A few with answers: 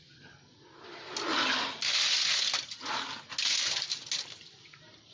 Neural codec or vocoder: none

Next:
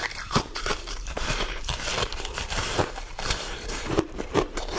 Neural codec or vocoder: vocoder, BigVGAN v2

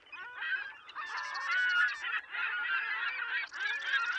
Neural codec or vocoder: none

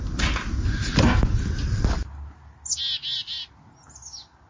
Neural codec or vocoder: none